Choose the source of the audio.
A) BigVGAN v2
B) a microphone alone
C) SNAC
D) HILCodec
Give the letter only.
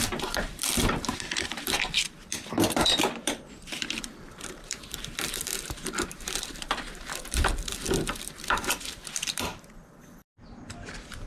A